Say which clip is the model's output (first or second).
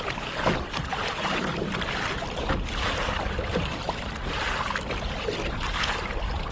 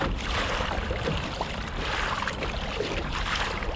second